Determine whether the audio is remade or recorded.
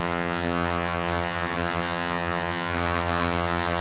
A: remade